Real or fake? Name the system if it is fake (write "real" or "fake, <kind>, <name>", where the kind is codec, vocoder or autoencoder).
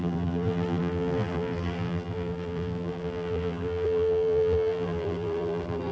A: fake, vocoder, BigVGAN v2